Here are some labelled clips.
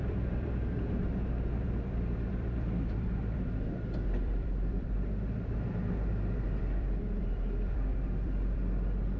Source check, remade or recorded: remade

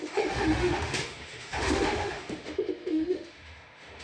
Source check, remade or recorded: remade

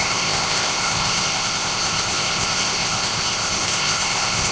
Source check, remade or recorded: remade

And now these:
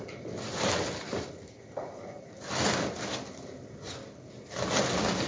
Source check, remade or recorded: recorded